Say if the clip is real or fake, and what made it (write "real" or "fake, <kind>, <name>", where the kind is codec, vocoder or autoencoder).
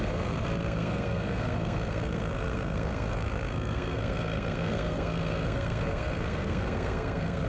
fake, codec, SNAC